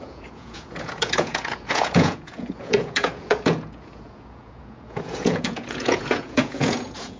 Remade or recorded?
remade